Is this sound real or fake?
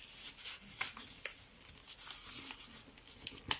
real